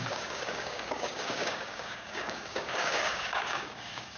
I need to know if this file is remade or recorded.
remade